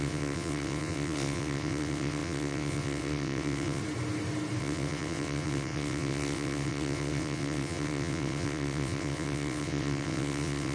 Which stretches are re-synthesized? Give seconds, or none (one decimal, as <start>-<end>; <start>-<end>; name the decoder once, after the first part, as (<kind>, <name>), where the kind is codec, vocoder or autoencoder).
0.0-3.8 (vocoder, WaveNeXt); 4.6-10.7